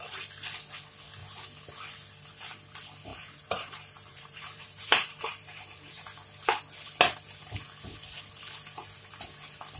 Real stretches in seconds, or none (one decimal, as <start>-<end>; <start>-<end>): 0.0-3.1; 6.0-9.8